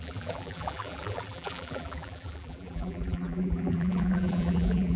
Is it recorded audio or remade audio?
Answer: remade